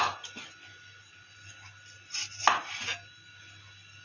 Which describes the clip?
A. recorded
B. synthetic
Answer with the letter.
A